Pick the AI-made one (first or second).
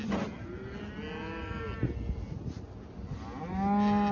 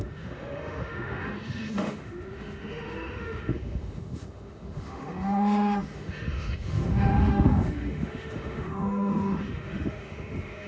second